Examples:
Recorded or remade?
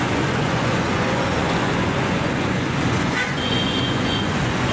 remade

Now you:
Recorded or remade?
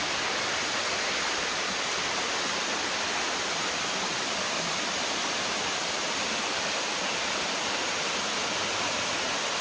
recorded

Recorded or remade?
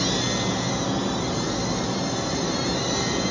recorded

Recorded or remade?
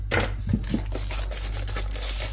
recorded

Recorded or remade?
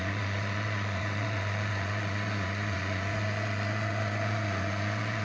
remade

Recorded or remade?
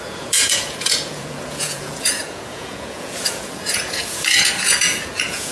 remade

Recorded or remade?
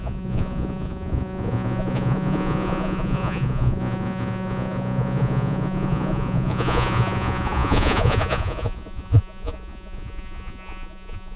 remade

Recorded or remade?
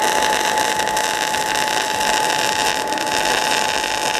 recorded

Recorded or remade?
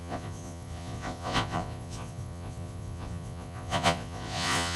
remade